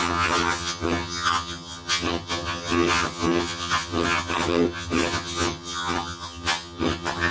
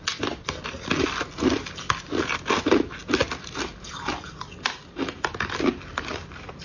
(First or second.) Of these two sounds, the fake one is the first